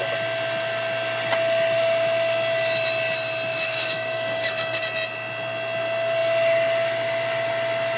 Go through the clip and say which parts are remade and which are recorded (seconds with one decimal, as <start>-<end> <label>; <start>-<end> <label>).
0.0-3.5 recorded; 3.5-4.8 remade; 4.8-8.0 recorded